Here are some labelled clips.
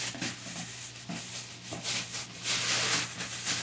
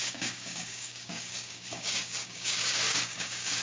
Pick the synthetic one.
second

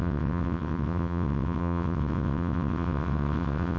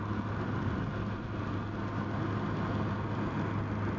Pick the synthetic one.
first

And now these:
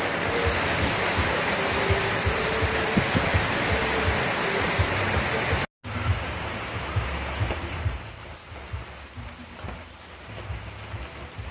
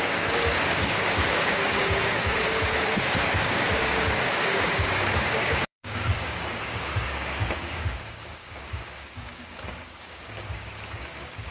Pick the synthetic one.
second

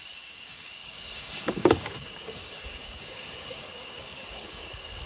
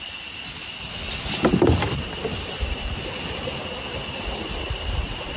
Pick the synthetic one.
first